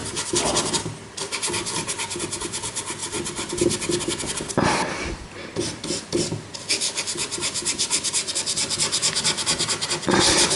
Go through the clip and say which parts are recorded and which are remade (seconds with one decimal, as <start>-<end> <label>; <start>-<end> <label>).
0.0-10.6 recorded